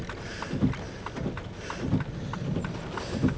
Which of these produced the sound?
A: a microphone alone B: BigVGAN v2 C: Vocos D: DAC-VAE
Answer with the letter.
A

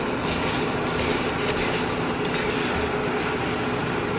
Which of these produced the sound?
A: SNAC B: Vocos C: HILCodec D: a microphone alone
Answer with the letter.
D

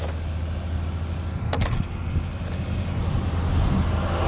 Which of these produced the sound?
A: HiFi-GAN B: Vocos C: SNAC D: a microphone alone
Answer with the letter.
D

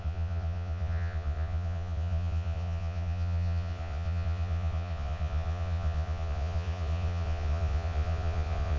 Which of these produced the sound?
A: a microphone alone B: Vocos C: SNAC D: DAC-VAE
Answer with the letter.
B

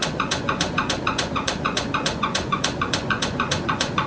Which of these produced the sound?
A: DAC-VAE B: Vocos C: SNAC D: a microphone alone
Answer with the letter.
B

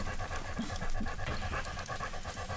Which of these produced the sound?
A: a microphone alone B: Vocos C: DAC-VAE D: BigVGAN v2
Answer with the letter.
A